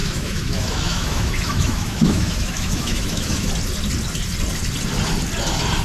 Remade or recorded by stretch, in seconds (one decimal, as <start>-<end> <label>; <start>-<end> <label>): 0.0-3.5 remade; 3.5-5.8 recorded